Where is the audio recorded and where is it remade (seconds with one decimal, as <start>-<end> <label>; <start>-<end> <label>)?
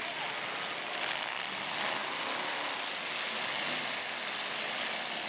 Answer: 0.0-5.3 recorded